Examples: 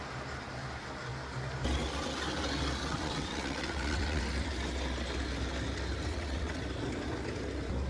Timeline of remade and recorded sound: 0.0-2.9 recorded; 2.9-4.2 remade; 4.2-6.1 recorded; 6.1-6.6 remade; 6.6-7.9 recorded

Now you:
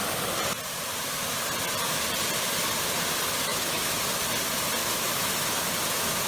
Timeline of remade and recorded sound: 0.0-3.5 recorded; 3.5-4.0 remade; 4.0-4.8 recorded; 4.8-5.6 remade; 5.6-6.3 recorded

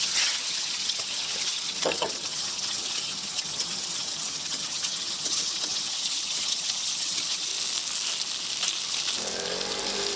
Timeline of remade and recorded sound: 0.0-7.5 remade; 7.5-10.2 recorded